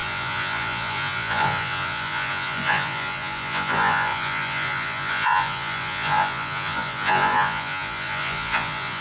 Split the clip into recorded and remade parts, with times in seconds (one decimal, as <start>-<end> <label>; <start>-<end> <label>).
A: 0.0-9.0 remade